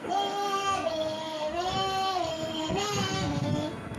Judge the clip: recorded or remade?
remade